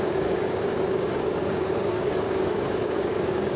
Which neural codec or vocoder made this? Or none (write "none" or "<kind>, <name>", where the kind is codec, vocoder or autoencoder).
codec, DAC